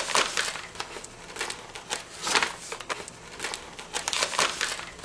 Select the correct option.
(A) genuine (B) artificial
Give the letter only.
A